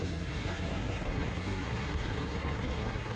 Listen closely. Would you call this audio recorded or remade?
remade